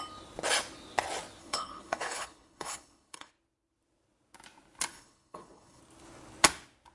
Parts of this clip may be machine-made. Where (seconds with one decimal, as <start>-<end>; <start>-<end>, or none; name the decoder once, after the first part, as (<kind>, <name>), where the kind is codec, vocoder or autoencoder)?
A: 1.4-3.3 (codec, HILCodec); 4.9-5.8